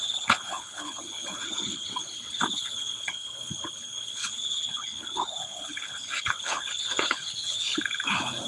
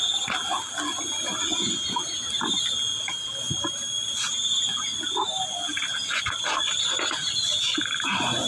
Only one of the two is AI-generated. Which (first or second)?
first